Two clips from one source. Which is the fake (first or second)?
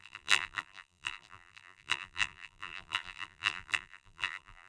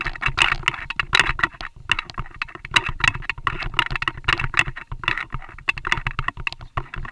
first